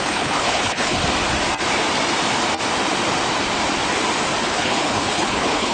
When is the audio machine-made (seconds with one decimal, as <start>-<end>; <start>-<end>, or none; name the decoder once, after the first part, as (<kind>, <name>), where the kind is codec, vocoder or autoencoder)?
0.0-1.0 (codec, HILCodec); 4.4-5.7

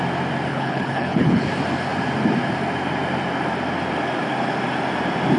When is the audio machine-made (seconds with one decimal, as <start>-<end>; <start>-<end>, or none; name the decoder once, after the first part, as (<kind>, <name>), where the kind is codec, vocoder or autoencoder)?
0.5-1.5 (codec, HILCodec)

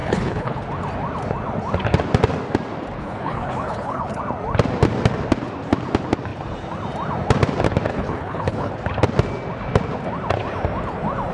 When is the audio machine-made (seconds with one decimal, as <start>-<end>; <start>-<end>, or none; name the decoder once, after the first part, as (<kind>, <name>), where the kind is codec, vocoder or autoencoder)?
0.0-0.6 (codec, HILCodec); 3.0-4.2; 7.9-8.7

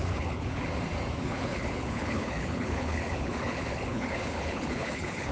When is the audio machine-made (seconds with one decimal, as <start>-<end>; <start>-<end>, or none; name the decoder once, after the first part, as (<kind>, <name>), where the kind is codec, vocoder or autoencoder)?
0.0-0.6 (codec, HILCodec); 1.2-5.3

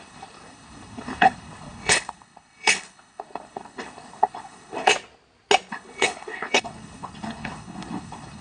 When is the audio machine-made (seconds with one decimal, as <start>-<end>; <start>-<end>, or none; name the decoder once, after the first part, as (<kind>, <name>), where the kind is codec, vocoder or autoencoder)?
0.0-4.9 (codec, HILCodec); 5.7-8.4

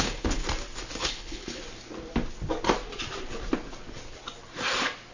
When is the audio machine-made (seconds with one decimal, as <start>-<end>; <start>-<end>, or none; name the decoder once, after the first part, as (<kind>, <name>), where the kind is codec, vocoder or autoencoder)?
0.0-0.4 (codec, HILCodec); 1.0-1.6

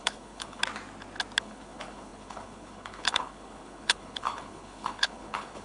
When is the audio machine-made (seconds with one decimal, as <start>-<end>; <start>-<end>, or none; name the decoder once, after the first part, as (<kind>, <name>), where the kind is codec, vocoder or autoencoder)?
0.0-0.6 (codec, HILCodec); 1.4-5.6